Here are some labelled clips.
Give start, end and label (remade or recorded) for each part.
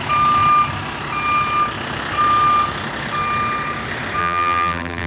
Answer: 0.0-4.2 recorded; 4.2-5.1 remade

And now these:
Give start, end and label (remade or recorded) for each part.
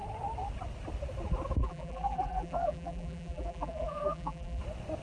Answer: 0.0-1.6 recorded; 1.6-4.6 remade; 4.6-5.0 recorded